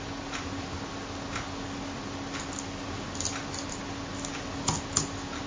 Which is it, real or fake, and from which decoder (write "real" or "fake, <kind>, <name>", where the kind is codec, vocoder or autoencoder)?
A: real